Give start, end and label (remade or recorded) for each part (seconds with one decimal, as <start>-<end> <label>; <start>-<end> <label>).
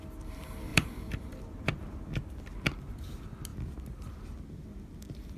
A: 0.0-0.7 recorded; 0.7-1.8 remade; 1.8-5.4 recorded